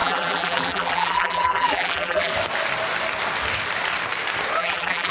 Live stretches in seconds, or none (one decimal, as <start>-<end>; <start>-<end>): 2.3-4.6